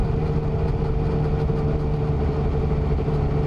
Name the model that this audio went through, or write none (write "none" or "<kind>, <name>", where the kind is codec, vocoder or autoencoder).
none